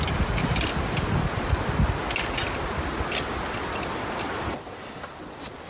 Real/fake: real